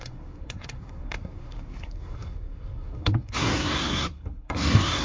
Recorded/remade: remade